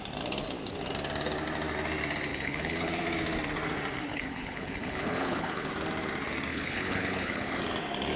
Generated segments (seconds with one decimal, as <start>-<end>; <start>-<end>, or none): 2.3-2.9; 4.1-5.7; 6.5-7.6